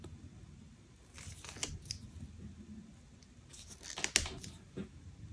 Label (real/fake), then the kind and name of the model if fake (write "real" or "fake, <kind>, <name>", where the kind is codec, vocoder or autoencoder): real